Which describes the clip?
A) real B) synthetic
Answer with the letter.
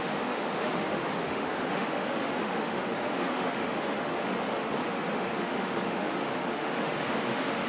B